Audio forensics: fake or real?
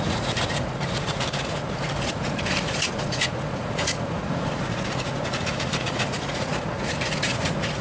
fake